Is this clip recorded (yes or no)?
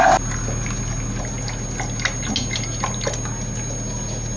yes